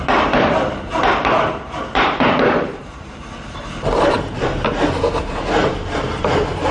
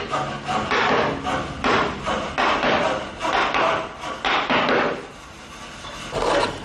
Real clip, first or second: second